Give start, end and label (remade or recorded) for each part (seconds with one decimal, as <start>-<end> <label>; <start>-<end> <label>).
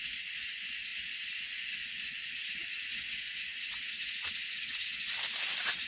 0.0-2.9 recorded; 2.9-3.4 remade; 3.4-4.4 recorded; 4.4-5.0 remade; 5.0-5.9 recorded